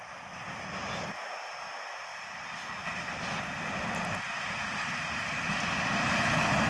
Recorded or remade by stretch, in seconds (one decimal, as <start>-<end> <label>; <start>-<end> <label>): 0.0-2.1 recorded; 2.1-6.1 remade; 6.1-6.7 recorded